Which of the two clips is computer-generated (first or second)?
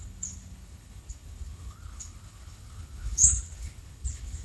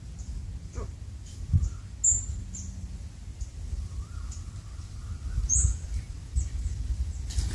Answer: first